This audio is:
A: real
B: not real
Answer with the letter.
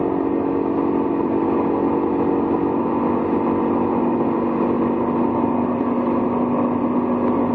A